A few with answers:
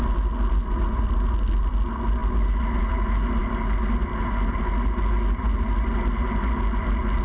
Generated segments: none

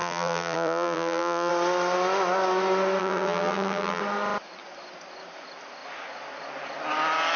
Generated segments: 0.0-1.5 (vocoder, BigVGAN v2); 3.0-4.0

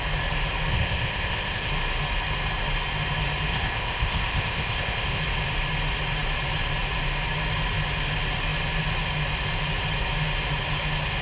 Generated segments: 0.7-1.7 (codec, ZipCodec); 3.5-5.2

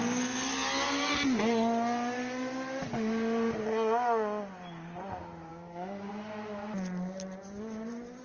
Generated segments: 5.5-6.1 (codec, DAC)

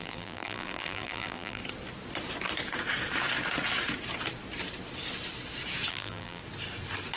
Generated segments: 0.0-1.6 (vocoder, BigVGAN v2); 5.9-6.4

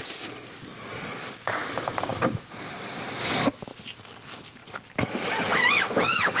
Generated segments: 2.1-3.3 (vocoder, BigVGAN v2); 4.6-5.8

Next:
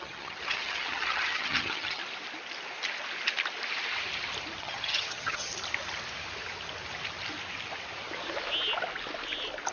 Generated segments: 0.0-2.0 (vocoder, HiFi-GAN); 4.6-5.5